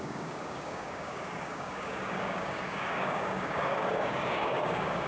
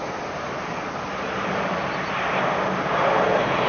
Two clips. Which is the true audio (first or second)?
second